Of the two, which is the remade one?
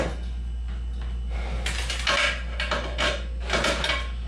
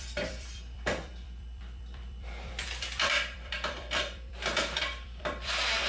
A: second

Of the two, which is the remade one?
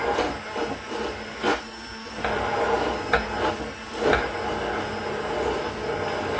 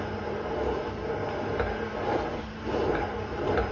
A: second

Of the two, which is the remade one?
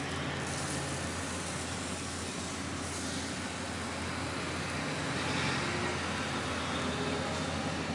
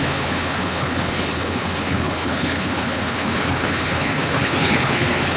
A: second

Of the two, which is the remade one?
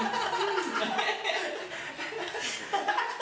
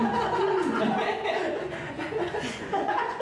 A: second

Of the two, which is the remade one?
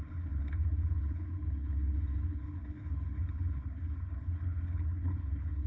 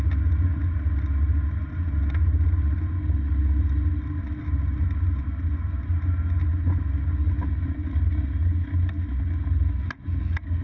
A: first